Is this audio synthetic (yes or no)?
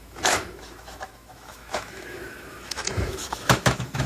yes